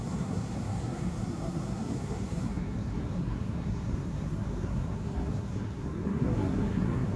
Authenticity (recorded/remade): remade